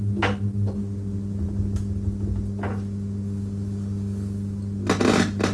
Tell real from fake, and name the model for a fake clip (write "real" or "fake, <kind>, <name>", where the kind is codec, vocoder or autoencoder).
real